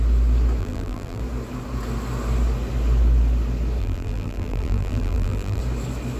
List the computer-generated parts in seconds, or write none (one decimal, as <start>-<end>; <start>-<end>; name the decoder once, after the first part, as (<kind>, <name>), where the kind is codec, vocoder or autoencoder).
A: 0.6-1.2 (vocoder, BigVGAN v2); 3.8-5.6

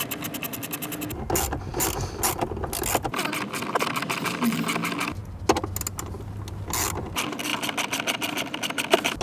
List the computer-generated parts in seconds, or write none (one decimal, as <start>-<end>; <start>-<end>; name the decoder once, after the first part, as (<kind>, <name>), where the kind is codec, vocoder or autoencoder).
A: none

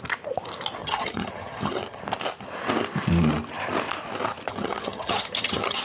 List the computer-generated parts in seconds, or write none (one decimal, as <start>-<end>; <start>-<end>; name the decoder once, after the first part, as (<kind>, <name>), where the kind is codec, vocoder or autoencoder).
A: 0.8-2.0 (vocoder, HiFi-GAN); 4.5-5.8

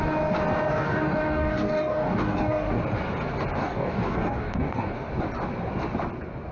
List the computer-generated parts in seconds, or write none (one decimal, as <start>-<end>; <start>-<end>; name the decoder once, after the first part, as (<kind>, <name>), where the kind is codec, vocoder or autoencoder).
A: 0.7-2.8 (codec, DAC); 3.6-5.1

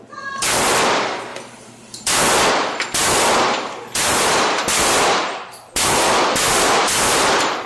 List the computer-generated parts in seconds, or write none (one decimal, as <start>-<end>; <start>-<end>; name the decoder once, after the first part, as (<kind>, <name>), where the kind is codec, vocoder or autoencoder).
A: none

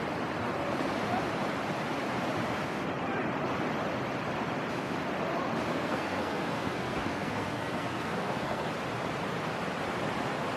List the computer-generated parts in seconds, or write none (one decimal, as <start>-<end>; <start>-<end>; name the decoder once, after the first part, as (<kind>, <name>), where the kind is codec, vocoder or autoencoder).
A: 5.7-8.7 (codec, SNAC)